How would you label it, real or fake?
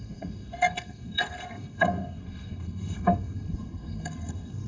fake